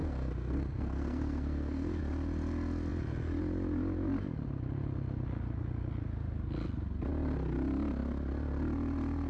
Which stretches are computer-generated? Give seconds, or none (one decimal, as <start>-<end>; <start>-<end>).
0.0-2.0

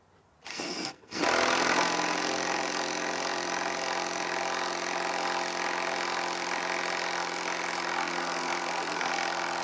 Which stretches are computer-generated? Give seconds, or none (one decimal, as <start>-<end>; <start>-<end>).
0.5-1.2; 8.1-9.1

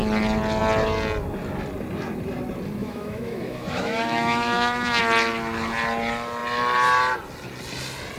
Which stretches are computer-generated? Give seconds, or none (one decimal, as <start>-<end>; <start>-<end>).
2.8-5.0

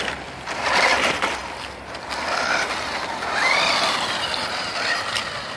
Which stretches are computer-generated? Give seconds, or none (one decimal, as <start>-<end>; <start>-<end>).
none

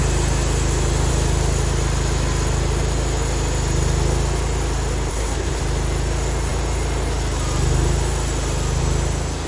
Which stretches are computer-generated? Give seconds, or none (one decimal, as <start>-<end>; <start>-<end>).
5.1-5.6

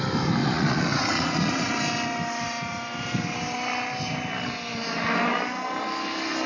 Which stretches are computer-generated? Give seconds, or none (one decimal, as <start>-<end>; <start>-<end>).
0.4-1.7

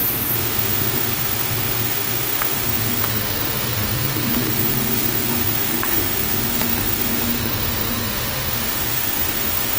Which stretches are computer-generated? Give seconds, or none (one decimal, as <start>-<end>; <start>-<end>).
0.0-9.8

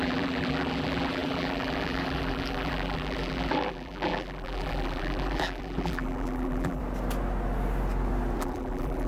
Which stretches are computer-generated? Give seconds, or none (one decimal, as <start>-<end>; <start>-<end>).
0.0-6.8; 8.4-9.1